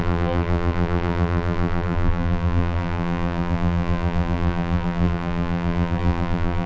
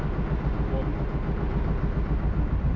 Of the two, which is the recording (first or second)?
second